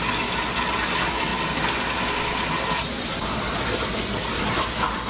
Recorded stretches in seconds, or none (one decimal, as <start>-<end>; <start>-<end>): 0.0-2.9; 3.9-5.1